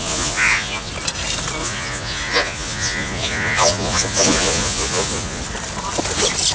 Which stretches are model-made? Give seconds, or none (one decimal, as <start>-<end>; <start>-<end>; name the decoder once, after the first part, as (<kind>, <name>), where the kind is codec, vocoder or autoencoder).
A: 0.0-0.9 (vocoder, Vocos); 1.6-5.4